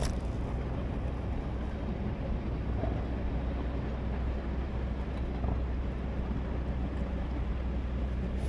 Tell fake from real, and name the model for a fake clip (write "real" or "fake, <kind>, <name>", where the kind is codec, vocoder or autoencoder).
real